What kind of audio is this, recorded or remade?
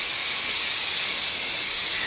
remade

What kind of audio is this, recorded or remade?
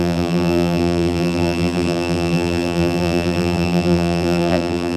remade